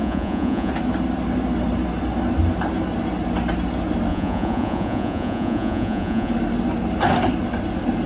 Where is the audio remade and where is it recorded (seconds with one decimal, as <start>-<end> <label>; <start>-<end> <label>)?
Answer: 0.0-0.7 remade; 0.7-4.1 recorded; 4.1-6.3 remade; 6.3-8.1 recorded